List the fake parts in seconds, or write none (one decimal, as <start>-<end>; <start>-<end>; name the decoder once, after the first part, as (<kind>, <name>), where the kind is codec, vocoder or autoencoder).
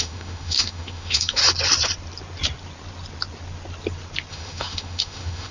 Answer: 0.0-1.4 (autoencoder, DAC-VAE); 4.3-5.5